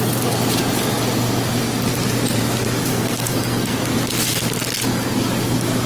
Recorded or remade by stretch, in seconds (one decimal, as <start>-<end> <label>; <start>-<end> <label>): 0.0-2.9 recorded; 2.9-3.8 remade; 3.8-5.9 recorded